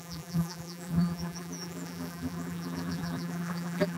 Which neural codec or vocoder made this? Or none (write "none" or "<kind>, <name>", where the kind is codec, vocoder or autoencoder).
vocoder, BigVGAN v2